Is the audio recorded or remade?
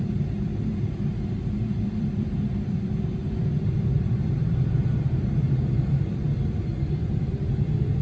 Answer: remade